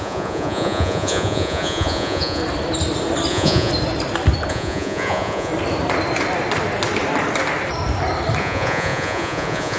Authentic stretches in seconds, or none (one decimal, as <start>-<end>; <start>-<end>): 2.4-3.3; 3.7-4.5; 5.5-8.4